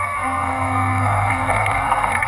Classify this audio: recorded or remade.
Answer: remade